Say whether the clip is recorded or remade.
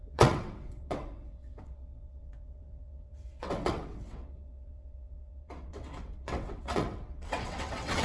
remade